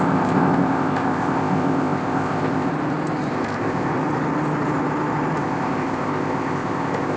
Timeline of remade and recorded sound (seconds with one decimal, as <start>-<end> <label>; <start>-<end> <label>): 0.0-2.7 remade; 2.7-3.3 recorded; 3.3-3.9 remade; 3.9-5.4 recorded; 5.4-7.2 remade